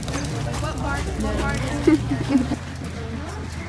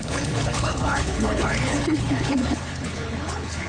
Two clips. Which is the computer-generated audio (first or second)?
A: second